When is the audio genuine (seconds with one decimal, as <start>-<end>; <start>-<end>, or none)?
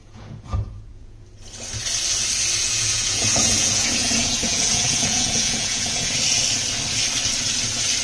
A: 1.2-2.6; 6.1-8.0